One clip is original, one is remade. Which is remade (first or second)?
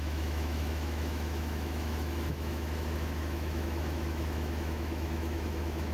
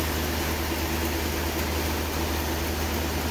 first